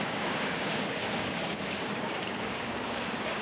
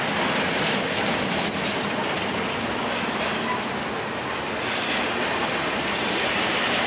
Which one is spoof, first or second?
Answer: first